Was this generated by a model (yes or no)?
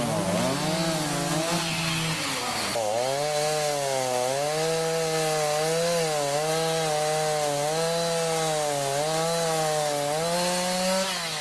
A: no